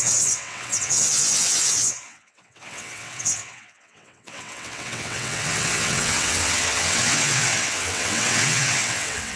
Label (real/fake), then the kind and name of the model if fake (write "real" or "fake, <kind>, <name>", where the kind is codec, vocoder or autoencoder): fake, vocoder, WaveNeXt